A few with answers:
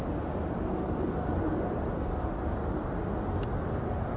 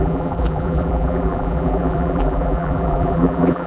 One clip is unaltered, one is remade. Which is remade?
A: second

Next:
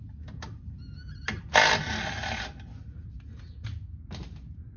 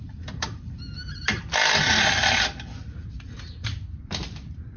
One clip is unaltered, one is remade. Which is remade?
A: second